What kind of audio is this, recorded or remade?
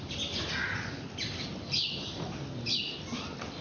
recorded